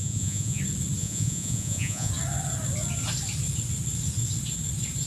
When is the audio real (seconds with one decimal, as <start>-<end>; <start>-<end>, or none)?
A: 0.6-1.0; 2.1-5.1